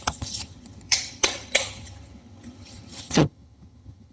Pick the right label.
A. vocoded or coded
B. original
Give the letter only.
A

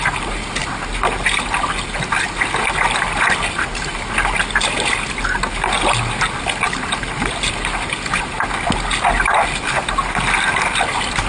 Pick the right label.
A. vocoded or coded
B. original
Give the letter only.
B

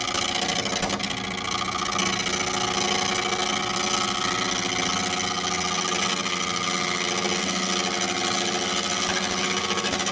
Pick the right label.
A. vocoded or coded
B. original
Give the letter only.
B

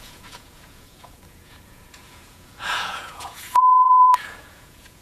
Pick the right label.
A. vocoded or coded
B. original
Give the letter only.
A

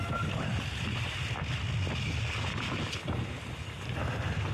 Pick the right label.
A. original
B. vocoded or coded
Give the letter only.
A